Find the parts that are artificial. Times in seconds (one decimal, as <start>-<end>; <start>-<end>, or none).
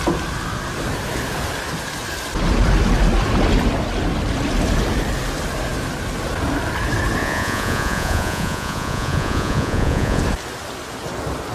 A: 7.2-10.2